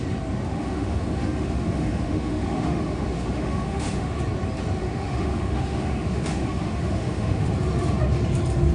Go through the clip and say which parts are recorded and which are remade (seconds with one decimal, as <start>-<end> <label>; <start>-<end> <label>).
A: 0.0-0.5 recorded; 0.5-4.2 remade; 4.2-4.8 recorded; 4.8-7.5 remade; 7.5-8.7 recorded